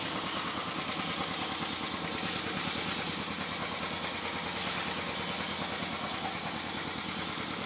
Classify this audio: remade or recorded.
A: recorded